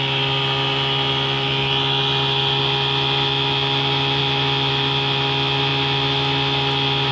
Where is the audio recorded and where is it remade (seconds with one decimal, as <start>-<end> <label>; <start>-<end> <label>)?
0.0-7.1 recorded